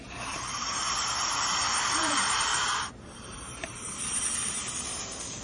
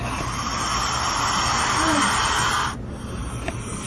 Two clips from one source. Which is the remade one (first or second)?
first